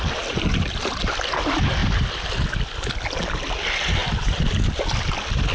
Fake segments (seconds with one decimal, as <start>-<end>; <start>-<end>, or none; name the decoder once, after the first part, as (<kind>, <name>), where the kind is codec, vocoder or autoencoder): none